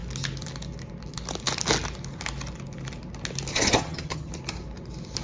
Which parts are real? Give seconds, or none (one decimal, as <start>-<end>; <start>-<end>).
0.0-3.5; 4.3-5.2